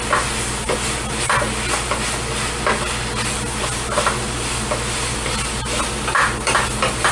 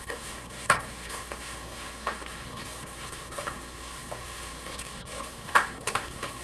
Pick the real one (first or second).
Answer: first